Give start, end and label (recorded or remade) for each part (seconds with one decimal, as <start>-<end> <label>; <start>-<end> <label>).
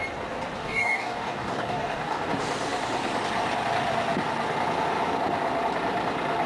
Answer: 0.0-0.6 recorded; 0.6-2.3 remade; 2.3-6.5 recorded